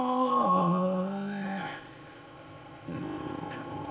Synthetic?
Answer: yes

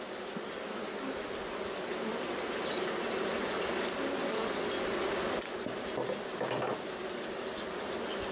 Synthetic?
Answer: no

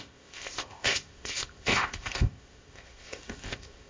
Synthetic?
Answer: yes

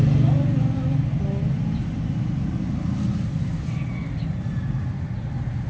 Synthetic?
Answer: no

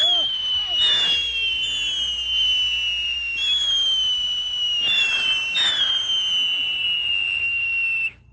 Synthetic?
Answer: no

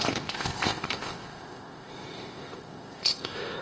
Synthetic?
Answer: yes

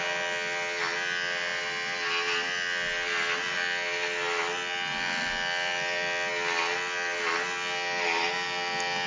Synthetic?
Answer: no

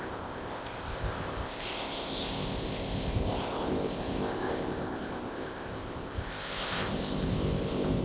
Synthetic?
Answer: yes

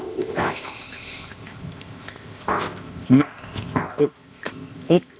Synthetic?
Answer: yes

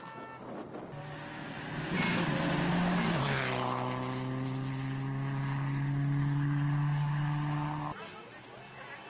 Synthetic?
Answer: no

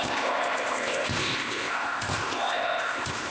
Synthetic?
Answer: yes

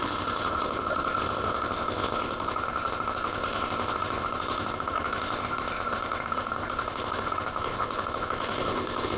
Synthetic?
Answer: yes